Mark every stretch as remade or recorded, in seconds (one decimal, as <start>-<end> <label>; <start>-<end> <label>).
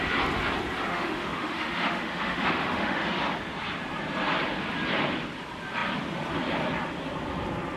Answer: 0.0-0.9 recorded; 0.9-3.2 remade; 3.2-7.8 recorded